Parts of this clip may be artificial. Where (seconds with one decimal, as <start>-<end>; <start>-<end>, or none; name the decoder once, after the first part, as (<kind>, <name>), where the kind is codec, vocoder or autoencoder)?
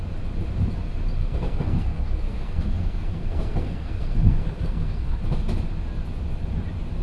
1.2-5.2 (codec, SNAC)